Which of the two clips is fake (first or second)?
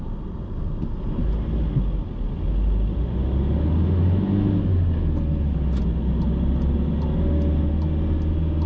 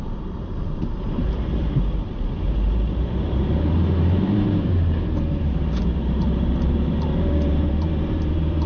second